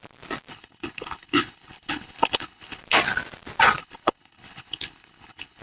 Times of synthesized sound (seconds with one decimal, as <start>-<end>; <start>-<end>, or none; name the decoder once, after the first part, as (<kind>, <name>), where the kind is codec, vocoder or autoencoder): 0.5-2.8 (codec, HILCodec); 3.8-5.6